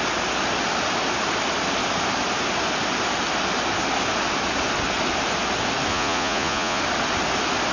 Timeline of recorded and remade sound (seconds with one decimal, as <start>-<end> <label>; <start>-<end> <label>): 0.0-5.9 recorded; 5.9-6.8 remade; 6.8-7.7 recorded